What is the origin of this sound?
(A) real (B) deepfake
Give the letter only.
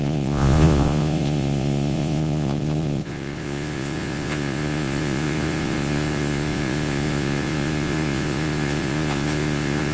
B